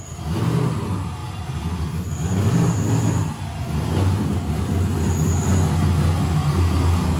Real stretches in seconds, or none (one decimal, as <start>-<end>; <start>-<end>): 0.0-7.2